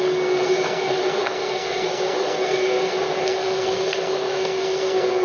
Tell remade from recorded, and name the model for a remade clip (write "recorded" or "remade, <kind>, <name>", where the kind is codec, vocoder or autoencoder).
remade, codec, SNAC